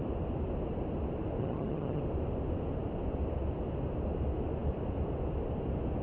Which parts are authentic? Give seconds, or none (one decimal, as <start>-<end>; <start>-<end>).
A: 0.0-1.4; 2.0-6.0